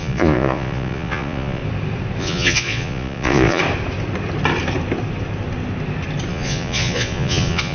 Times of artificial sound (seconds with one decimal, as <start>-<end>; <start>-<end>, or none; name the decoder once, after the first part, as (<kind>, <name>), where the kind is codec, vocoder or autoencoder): 0.0-1.6 (vocoder, Vocos); 2.2-3.6; 6.3-7.7

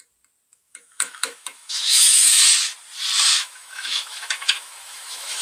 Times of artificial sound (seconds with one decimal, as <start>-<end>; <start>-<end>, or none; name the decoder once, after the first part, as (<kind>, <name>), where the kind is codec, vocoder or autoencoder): 0.5-2.4 (autoencoder, DAC-VAE); 3.3-5.4

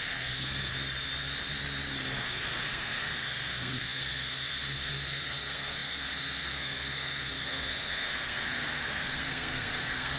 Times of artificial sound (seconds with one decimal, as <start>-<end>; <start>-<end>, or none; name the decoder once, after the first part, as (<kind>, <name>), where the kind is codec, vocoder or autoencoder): 0.0-0.7 (codec, SNAC); 2.2-10.2

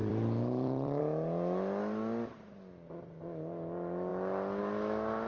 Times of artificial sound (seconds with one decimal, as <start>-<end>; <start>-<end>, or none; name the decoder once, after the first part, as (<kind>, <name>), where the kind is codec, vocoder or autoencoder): 0.0-1.0 (vocoder, BigVGAN v2)

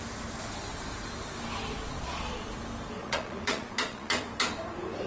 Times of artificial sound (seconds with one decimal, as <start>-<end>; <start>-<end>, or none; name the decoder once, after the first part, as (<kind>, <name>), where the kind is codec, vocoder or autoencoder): 1.8-2.6 (vocoder, Vocos); 3.0-4.2

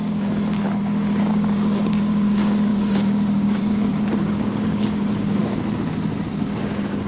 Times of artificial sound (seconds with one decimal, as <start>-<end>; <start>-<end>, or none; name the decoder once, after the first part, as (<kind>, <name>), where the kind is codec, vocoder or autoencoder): 1.2-5.4 (codec, DAC); 6.3-7.1